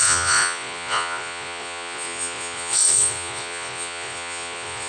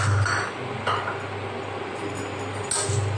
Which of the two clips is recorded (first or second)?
second